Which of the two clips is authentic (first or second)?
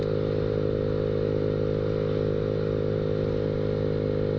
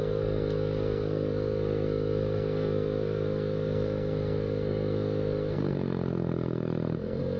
first